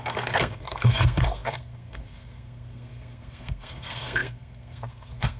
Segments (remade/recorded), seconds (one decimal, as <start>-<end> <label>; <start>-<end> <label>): 0.0-5.4 remade